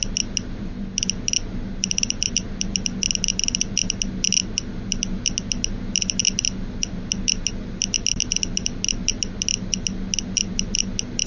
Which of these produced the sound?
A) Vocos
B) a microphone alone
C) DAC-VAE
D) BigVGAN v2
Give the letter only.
B